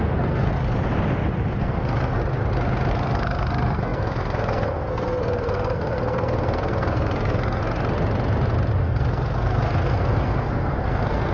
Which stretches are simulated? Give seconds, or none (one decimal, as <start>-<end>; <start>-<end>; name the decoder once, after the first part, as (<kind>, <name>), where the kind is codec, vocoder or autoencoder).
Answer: 0.0-0.5 (codec, SNAC); 1.6-2.2; 2.9-7.6; 8.8-11.3